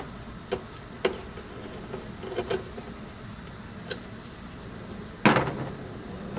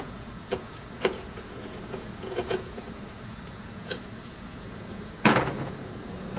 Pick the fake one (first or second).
second